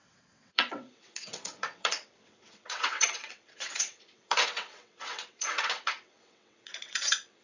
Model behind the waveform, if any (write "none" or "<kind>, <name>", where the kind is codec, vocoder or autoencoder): vocoder, WaveNeXt